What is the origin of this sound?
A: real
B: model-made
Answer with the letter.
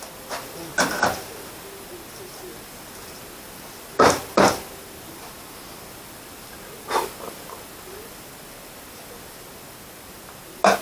A